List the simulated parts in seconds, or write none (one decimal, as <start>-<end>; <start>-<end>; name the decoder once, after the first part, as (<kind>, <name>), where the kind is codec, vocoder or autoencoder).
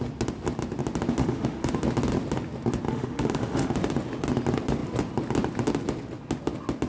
1.2-1.7 (autoencoder, DAC-VAE); 2.9-3.7